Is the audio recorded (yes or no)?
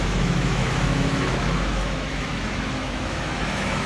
no